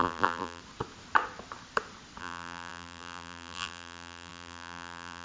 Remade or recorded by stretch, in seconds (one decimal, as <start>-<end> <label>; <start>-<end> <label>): 0.0-0.6 remade; 0.6-2.2 recorded; 2.2-5.2 remade